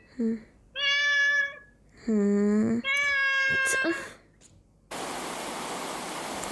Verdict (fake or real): real